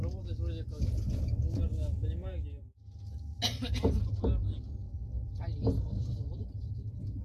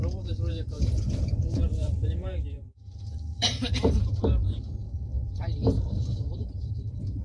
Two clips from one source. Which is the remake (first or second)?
second